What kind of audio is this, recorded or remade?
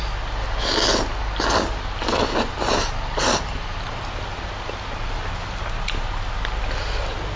recorded